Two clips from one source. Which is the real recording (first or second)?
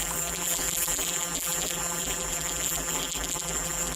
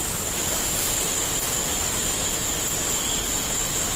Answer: second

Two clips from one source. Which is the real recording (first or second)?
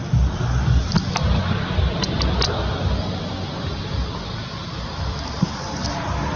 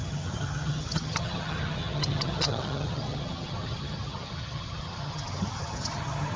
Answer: first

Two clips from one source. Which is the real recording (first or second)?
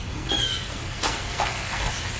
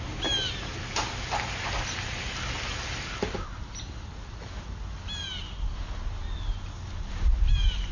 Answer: second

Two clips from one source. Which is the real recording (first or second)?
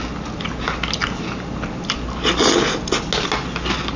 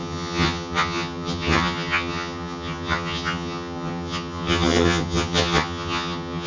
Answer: first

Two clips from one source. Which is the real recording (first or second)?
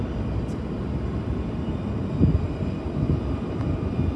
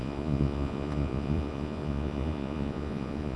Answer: first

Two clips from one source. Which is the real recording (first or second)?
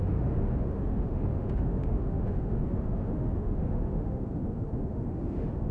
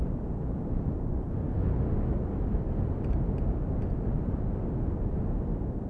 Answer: second